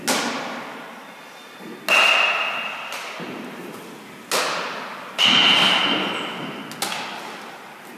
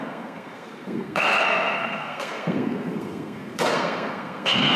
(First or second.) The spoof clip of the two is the second